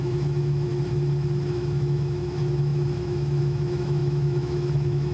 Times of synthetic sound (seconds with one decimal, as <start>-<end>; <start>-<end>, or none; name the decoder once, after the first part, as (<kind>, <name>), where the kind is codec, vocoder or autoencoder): 0.0-0.7 (autoencoder, DAC-VAE); 1.5-5.1